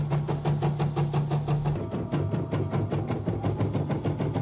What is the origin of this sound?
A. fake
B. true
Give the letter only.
B